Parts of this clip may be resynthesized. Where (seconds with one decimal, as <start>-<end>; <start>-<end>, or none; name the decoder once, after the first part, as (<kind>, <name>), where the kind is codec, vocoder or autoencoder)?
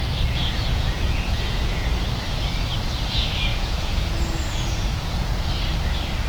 0.4-1.9 (vocoder, Vocos); 3.5-5.5